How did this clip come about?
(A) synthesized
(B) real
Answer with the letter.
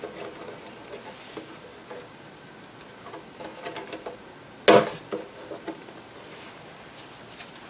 B